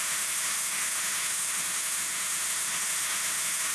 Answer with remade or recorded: remade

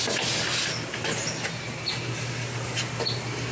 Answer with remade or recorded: recorded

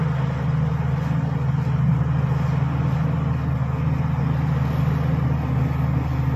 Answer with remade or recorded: recorded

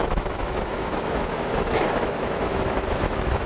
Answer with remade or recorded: remade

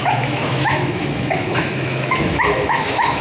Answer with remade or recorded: remade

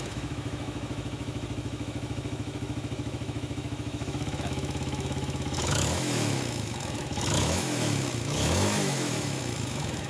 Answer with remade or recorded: remade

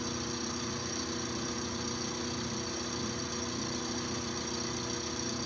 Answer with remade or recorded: recorded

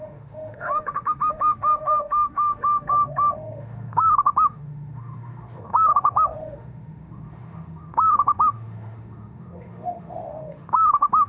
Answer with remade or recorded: remade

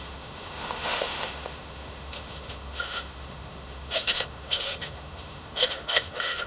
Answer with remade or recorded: remade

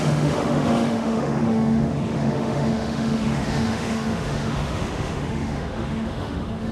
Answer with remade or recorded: remade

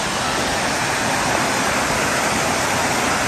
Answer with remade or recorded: recorded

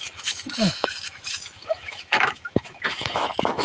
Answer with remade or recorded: remade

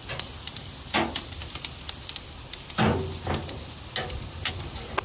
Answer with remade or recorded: recorded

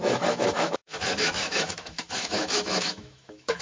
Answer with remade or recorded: remade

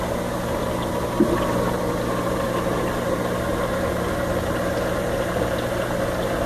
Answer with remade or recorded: recorded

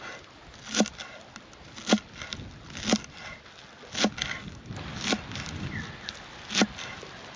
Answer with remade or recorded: recorded